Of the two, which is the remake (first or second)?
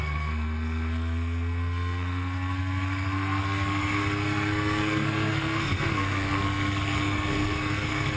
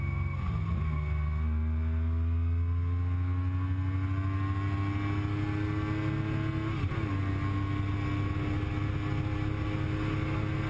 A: first